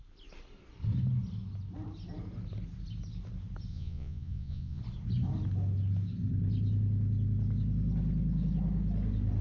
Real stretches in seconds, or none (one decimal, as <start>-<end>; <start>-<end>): 0.0-3.7; 4.8-9.4